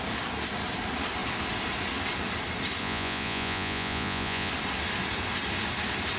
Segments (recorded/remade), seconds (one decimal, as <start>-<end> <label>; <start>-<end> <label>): 0.0-2.8 recorded; 2.8-4.5 remade; 4.5-6.2 recorded